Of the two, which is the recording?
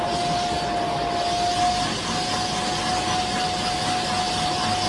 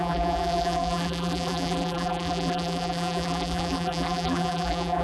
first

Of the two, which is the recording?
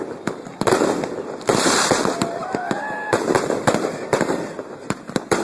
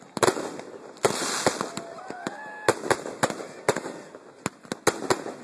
second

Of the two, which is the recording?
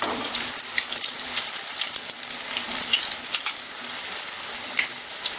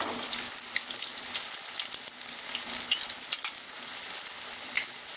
second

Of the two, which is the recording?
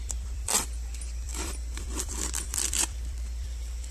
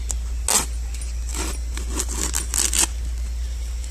second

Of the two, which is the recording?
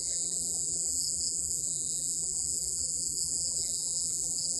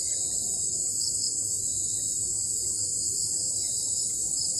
second